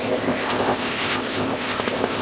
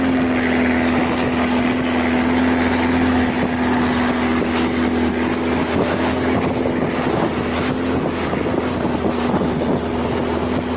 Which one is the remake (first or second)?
first